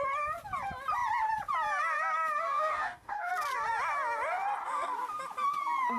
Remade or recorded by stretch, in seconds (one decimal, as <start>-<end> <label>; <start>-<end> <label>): 0.0-2.4 recorded; 2.4-3.3 remade; 3.3-6.0 recorded

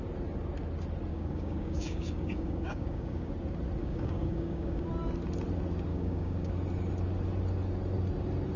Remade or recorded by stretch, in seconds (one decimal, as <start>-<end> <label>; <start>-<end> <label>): 0.0-1.1 recorded; 1.1-3.3 remade; 3.3-3.8 recorded; 3.8-4.8 remade; 4.8-5.9 recorded; 5.9-6.5 remade; 6.5-8.6 recorded

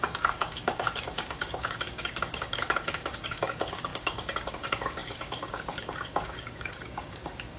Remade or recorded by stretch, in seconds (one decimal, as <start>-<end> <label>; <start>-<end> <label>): 0.0-7.6 remade

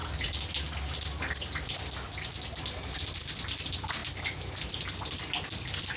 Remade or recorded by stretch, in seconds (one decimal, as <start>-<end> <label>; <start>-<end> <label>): 0.0-6.0 recorded

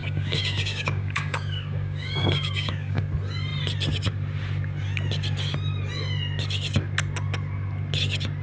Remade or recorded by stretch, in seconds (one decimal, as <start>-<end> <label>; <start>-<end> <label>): 0.0-3.0 remade; 3.0-8.4 recorded

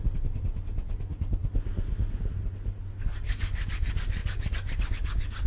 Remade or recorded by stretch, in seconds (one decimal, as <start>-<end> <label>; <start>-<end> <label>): 0.0-5.5 recorded

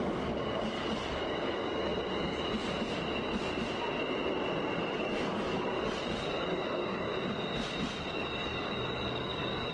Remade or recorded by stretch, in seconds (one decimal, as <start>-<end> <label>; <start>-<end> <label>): 0.0-1.9 remade; 1.9-4.8 recorded; 4.8-7.1 remade; 7.1-8.1 recorded; 8.1-9.7 remade

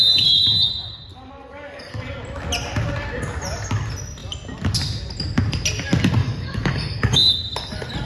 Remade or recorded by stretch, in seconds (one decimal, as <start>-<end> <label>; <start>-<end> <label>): 0.0-1.1 recorded; 1.1-1.9 remade; 1.9-6.2 recorded; 6.2-7.3 remade; 7.3-8.1 recorded